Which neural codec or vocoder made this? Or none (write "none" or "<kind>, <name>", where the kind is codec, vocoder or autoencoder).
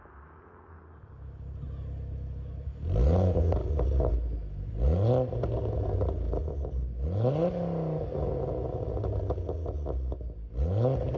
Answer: none